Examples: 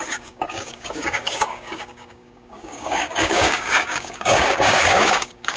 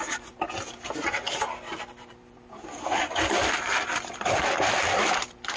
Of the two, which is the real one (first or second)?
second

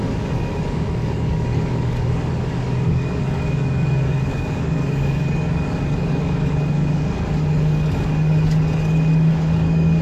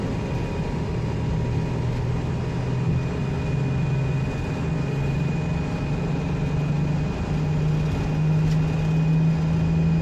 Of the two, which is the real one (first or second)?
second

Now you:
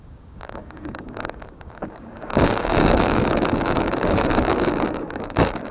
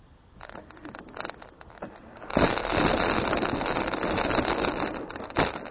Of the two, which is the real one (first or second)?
second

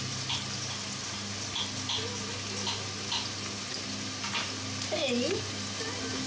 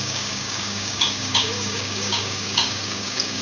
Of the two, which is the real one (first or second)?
first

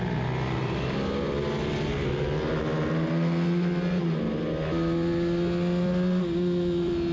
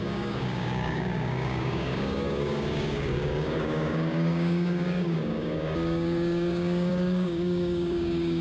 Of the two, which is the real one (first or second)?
first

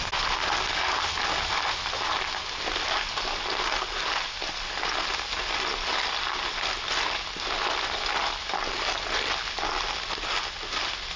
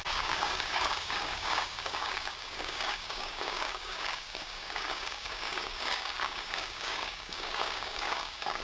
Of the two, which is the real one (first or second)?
first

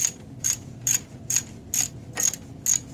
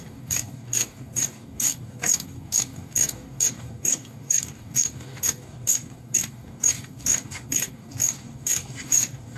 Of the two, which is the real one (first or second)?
first